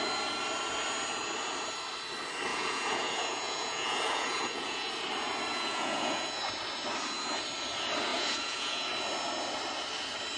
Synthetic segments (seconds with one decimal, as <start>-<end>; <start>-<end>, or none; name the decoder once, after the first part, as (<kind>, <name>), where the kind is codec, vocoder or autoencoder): 2.5-4.9 (vocoder, Vocos); 5.5-6.4; 8.1-8.9